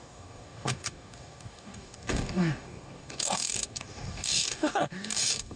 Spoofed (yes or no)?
yes